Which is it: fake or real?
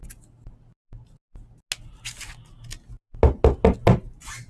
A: real